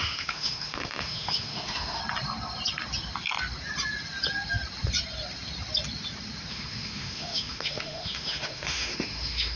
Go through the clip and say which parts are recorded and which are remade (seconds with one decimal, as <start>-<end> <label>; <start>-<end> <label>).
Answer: 0.0-2.0 remade; 2.0-6.5 recorded; 6.5-9.6 remade